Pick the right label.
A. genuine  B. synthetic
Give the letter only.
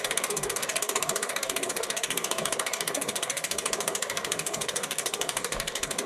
B